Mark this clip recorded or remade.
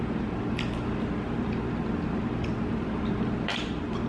recorded